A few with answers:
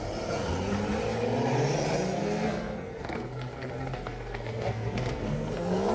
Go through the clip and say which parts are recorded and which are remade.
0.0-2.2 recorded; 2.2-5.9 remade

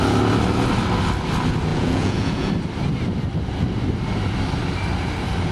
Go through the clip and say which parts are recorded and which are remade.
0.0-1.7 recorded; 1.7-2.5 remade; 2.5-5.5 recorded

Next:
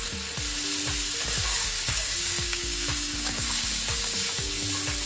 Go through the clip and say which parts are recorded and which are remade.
0.0-1.4 recorded; 1.4-4.5 remade; 4.5-5.1 recorded

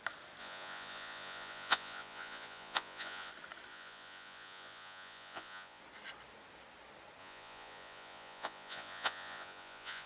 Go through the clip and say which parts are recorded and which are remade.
0.0-0.4 recorded; 0.4-3.3 remade; 3.3-3.7 recorded; 3.7-5.8 remade; 5.8-7.2 recorded; 7.2-10.1 remade

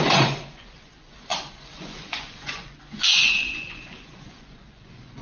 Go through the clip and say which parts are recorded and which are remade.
0.0-5.2 remade